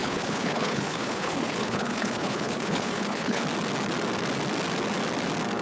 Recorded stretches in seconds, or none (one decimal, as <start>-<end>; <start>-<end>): 3.4-5.6